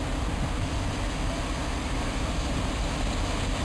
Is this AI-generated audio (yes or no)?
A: no